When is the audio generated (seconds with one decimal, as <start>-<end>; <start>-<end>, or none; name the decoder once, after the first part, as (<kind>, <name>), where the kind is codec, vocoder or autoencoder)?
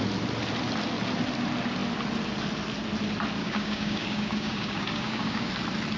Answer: 3.4-5.5 (codec, DAC)